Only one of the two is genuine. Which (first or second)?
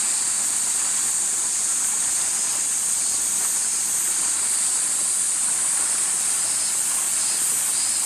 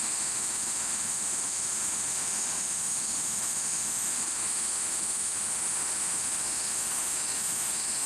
first